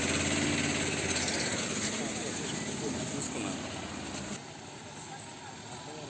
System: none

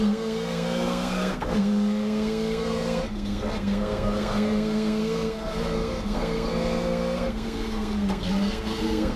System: codec, SNAC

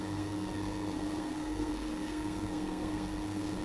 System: codec, SNAC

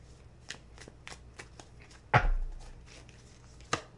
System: none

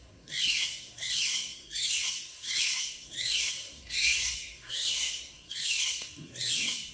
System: codec, SNAC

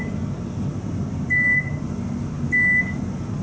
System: none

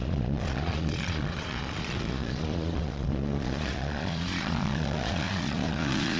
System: vocoder, Vocos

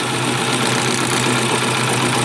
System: none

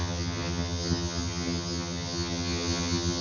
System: vocoder, HiFi-GAN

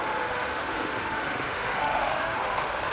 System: autoencoder, DAC-VAE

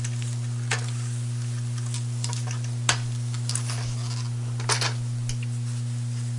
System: none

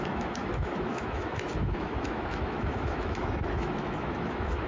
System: autoencoder, DAC-VAE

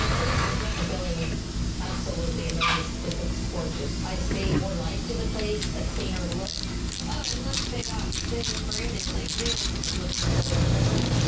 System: none